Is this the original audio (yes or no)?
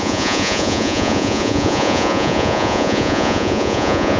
no